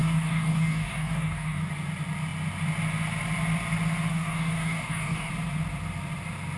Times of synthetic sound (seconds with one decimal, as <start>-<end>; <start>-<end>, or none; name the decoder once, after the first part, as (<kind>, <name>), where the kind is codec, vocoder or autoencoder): 0.0-1.7 (codec, DAC); 4.1-5.3